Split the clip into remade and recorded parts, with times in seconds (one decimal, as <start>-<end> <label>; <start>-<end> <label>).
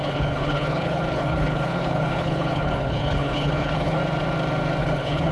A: 0.0-4.0 remade; 4.0-4.8 recorded; 4.8-5.3 remade